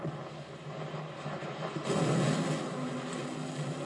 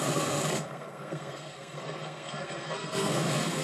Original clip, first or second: first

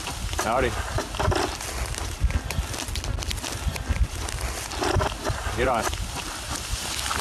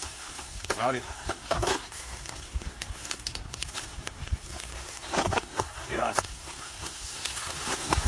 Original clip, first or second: first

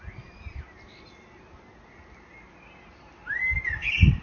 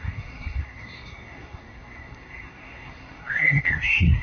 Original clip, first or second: first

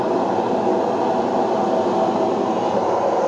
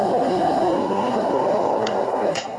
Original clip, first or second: first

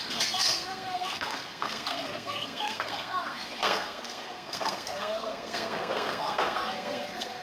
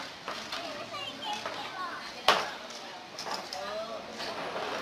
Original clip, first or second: second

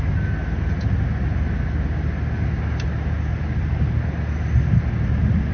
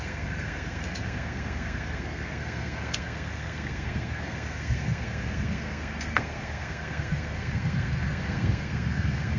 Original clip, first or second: first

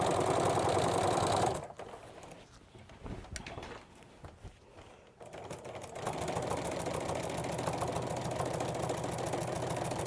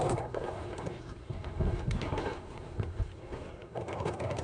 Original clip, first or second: first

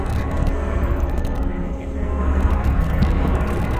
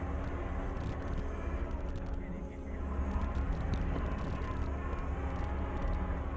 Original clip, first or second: second